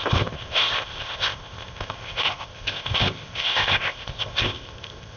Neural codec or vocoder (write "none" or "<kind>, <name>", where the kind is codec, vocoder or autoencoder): codec, ZipCodec